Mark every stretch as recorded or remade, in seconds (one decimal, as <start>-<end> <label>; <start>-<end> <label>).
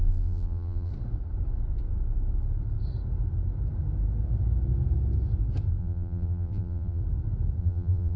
0.0-0.9 remade; 0.9-5.8 recorded; 5.8-7.0 remade; 7.0-7.6 recorded; 7.6-8.2 remade